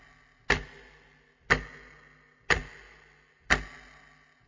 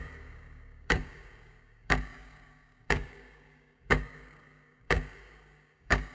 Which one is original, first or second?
first